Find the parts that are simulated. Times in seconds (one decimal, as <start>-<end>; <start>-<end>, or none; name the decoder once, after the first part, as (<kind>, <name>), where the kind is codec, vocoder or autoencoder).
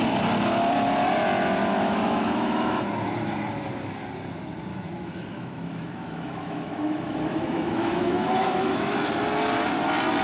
1.7-2.8 (autoencoder, DAC-VAE); 4.7-9.1